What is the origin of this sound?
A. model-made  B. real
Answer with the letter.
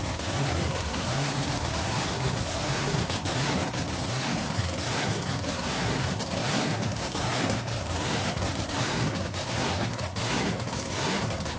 A